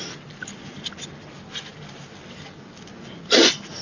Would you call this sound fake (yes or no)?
no